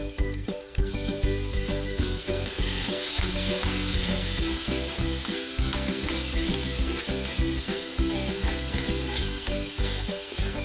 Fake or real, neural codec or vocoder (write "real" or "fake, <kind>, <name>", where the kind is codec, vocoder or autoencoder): fake, codec, SNAC